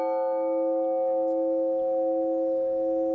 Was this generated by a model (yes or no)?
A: no